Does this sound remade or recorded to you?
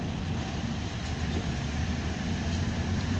recorded